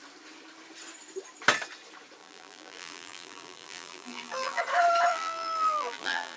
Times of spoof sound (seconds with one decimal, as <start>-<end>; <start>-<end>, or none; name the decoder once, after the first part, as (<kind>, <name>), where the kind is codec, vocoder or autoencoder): 2.2-4.6 (vocoder, BigVGAN v2); 5.1-6.4